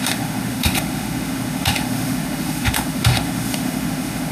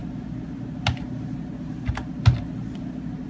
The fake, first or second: first